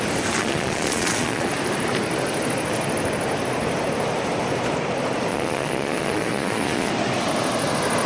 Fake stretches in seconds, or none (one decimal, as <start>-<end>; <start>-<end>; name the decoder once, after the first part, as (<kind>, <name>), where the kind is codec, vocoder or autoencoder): 0.4-1.5 (vocoder, Vocos); 5.3-6.9